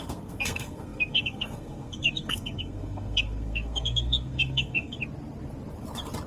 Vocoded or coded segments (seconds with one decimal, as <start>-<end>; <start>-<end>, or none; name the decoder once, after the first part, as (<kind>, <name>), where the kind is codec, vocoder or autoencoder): 0.0-5.0 (codec, SNAC)